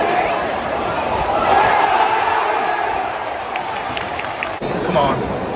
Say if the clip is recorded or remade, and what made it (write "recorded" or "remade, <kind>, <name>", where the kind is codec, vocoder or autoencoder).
remade, vocoder, BigVGAN v2